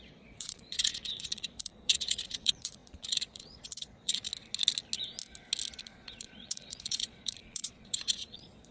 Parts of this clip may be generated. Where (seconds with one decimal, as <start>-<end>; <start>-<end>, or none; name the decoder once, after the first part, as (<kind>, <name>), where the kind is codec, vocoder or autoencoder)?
0.0-4.3 (vocoder, Vocos); 5.8-8.7